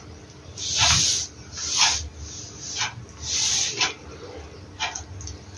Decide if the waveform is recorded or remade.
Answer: recorded